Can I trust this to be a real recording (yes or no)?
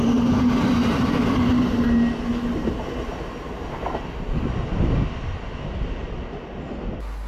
yes